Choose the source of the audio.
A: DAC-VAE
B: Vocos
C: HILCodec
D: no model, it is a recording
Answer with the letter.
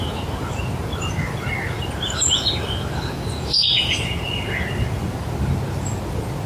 D